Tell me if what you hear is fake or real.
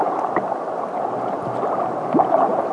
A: real